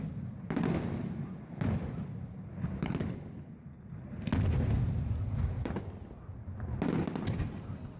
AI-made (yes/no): no